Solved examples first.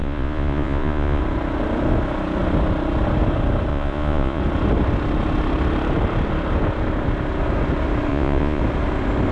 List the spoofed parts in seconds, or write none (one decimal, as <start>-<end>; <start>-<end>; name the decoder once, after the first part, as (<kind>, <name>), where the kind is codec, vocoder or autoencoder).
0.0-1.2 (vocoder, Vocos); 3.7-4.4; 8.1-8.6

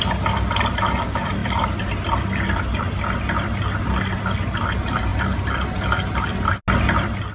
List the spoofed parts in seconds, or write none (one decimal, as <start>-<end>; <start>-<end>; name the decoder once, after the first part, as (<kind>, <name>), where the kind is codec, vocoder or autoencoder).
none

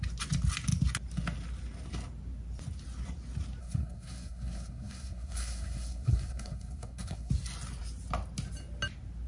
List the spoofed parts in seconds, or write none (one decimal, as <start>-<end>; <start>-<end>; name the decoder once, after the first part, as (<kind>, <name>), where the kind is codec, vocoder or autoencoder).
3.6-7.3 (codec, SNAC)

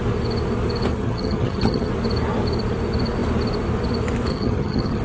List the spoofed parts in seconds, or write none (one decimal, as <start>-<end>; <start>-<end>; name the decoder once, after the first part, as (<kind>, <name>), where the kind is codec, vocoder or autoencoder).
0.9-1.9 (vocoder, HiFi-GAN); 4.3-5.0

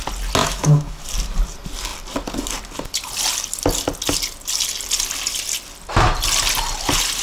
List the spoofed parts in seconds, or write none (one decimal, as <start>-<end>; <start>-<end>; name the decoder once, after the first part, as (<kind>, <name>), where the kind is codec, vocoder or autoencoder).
0.4-1.0 (autoencoder, DAC-VAE)